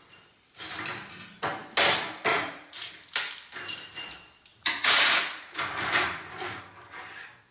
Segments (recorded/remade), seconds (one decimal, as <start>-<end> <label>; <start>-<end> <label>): 0.0-2.3 recorded; 2.3-2.9 remade; 2.9-4.5 recorded; 4.5-6.6 remade; 6.6-7.5 recorded

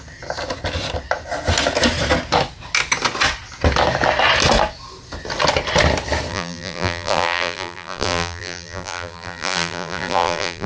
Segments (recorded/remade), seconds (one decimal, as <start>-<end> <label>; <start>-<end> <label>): 0.0-6.3 recorded; 6.3-10.7 remade